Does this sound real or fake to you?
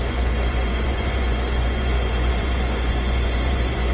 fake